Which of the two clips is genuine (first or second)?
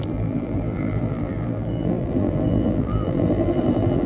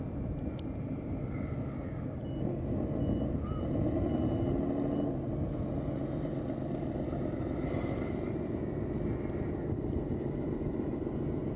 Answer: second